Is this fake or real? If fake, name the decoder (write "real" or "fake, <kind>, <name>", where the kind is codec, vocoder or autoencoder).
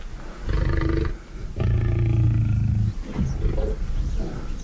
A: real